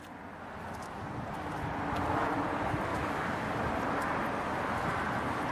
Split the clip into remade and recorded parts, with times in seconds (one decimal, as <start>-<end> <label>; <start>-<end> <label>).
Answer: 0.0-2.9 recorded; 2.9-3.6 remade; 3.6-5.5 recorded